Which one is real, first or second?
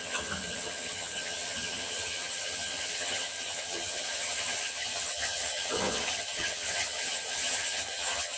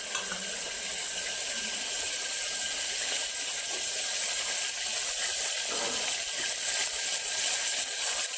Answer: second